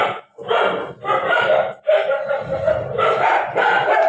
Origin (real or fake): fake